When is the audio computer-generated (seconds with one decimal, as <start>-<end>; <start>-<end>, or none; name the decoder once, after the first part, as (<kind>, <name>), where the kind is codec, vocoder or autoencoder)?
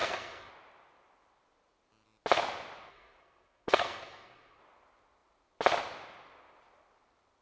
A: 0.0-0.5 (codec, SNAC); 2.9-4.6